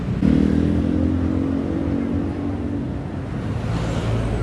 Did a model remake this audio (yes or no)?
no